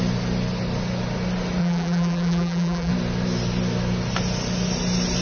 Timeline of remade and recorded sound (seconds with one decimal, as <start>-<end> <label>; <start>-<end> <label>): 0.0-1.6 recorded; 1.6-2.9 remade; 2.9-5.2 recorded